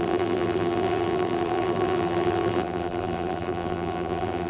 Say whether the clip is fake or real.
fake